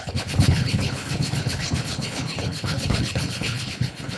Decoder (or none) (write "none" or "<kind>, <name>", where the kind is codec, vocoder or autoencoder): codec, HILCodec